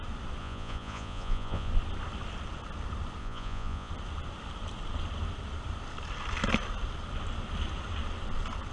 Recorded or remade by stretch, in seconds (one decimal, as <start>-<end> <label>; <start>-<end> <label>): 0.0-0.4 recorded; 0.4-1.7 remade; 1.7-3.2 recorded; 3.2-3.9 remade; 3.9-8.7 recorded